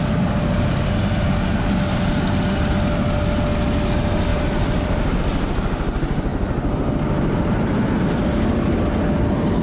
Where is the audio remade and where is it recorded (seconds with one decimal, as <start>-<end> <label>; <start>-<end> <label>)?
0.0-4.3 recorded; 4.3-5.2 remade; 5.2-9.6 recorded